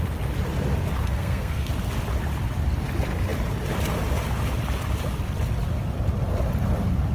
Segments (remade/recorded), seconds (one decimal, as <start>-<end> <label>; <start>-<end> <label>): 0.0-1.0 recorded; 1.0-1.7 remade; 1.7-7.1 recorded